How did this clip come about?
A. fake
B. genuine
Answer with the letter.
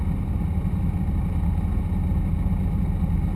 B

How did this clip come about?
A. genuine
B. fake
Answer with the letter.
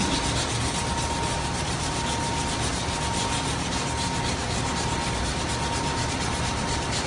A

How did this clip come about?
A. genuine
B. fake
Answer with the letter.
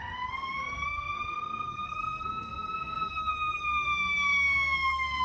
B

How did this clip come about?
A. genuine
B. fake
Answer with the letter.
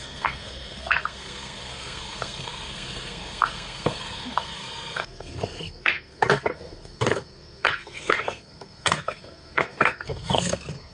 B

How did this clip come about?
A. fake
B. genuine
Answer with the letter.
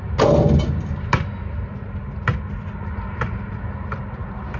B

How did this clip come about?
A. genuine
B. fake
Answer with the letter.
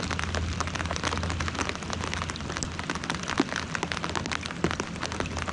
A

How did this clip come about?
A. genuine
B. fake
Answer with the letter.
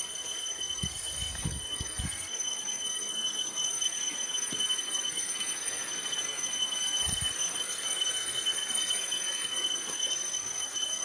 B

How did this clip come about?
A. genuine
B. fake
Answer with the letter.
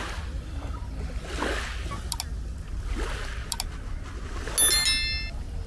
A